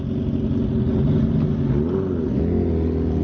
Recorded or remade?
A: recorded